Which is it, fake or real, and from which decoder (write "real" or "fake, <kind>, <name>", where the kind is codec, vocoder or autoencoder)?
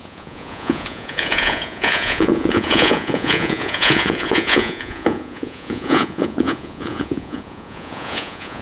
fake, vocoder, Vocos